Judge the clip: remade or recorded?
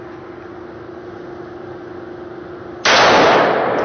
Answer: recorded